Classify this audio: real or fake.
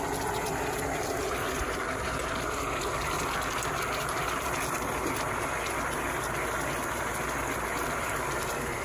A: real